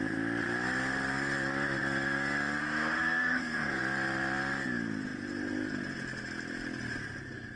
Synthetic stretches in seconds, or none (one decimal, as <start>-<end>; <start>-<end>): 2.6-3.8